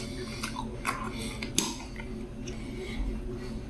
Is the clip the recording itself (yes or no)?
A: yes